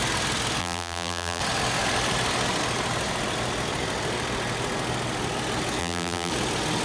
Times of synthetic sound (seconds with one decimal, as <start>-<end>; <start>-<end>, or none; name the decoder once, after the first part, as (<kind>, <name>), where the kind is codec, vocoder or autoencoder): 0.6-1.4 (vocoder, BigVGAN v2); 5.8-6.3